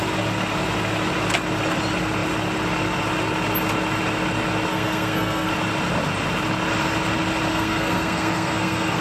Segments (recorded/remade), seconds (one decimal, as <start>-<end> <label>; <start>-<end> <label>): 0.0-4.7 recorded; 4.7-5.5 remade; 5.5-7.5 recorded; 7.5-9.0 remade